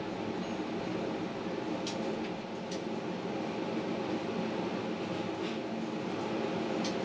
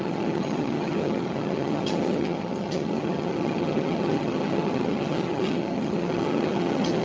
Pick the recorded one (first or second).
first